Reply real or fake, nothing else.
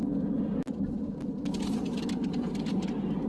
real